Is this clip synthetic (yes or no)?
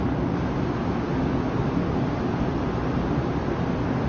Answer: no